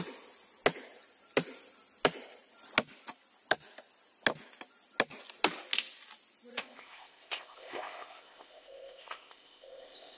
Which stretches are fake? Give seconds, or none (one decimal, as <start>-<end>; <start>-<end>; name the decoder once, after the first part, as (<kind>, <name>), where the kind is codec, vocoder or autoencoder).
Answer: 6.6-10.2 (codec, ZipCodec)